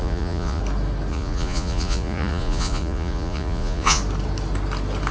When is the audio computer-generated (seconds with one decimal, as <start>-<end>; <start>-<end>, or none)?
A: 0.0-0.6; 1.1-4.0

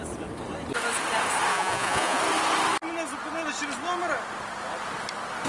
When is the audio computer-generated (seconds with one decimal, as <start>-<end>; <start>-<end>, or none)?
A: 1.5-2.2

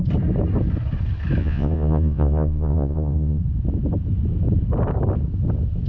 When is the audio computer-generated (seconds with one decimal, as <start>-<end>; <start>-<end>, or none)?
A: 1.4-3.4